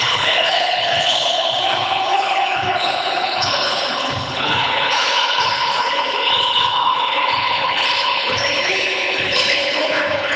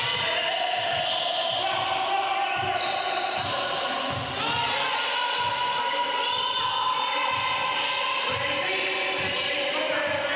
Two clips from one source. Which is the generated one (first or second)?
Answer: first